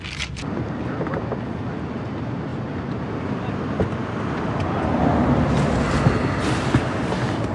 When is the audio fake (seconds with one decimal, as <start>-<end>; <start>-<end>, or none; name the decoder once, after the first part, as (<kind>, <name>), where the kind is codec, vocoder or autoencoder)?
none